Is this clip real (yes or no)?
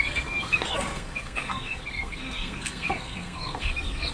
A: no